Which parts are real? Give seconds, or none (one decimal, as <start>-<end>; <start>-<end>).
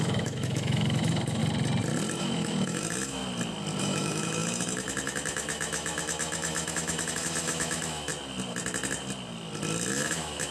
1.4-2.2; 3.2-3.8; 8.1-9.9